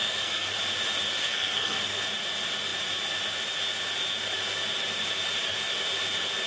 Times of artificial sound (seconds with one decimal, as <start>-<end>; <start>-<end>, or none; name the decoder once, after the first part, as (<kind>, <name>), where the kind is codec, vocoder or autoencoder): 0.0-0.6 (codec, SNAC); 1.2-2.0